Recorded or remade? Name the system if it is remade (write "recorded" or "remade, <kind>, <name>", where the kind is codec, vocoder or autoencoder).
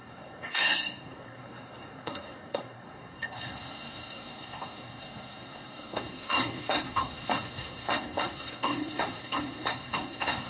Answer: remade, codec, SNAC